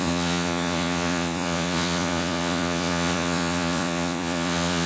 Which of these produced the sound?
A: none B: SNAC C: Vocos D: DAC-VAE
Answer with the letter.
C